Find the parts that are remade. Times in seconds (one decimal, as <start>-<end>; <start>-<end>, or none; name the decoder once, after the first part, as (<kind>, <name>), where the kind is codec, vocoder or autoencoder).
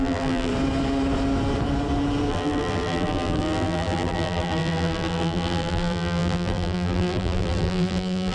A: 0.0-0.5 (vocoder, BigVGAN v2); 2.3-8.3